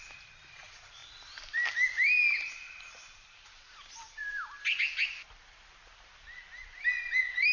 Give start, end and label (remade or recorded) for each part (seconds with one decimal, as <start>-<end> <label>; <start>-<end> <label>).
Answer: 0.0-7.5 recorded